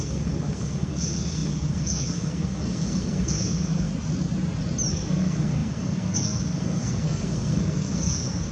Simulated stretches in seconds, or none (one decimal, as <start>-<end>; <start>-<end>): 0.0-3.9; 4.9-8.5